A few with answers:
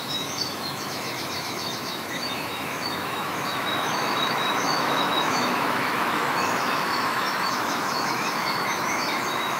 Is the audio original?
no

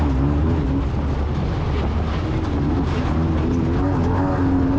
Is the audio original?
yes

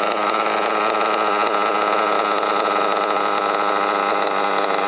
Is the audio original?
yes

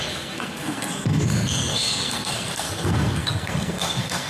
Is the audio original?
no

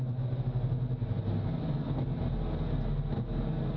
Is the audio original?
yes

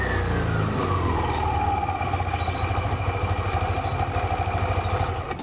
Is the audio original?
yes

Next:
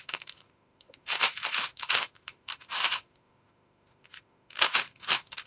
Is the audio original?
no